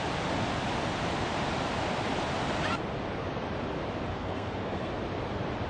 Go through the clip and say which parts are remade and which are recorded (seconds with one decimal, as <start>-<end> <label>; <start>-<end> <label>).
0.0-4.1 recorded; 4.1-4.9 remade; 4.9-5.7 recorded